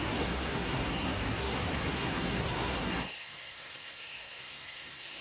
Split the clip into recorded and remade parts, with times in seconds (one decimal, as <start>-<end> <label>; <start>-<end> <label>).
0.0-5.2 remade